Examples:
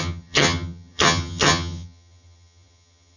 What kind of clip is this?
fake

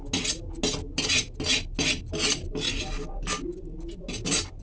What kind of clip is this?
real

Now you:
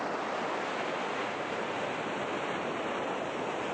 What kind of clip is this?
real